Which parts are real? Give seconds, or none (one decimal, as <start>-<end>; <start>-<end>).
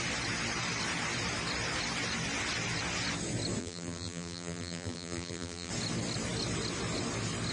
0.0-3.6; 5.7-7.5